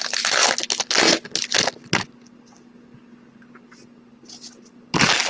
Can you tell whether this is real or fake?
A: real